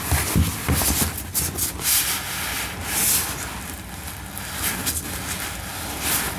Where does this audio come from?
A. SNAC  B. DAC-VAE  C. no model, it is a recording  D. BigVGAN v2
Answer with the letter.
C